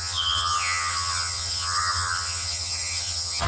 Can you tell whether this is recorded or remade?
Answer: remade